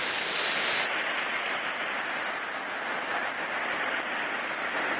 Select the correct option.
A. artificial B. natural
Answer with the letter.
B